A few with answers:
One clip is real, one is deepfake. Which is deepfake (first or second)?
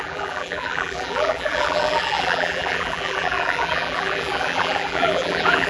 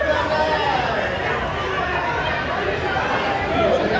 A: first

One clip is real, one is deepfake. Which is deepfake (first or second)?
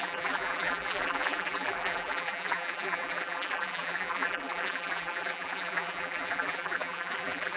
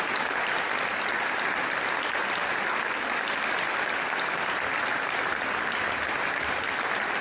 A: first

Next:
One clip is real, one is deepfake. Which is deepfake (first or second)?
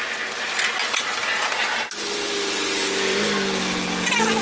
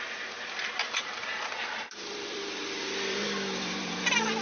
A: second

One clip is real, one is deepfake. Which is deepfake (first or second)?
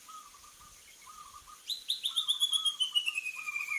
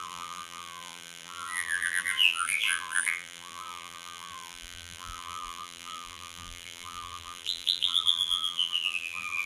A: second